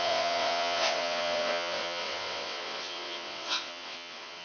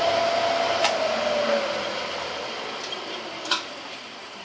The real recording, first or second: second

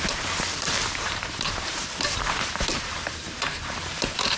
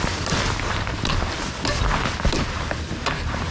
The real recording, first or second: second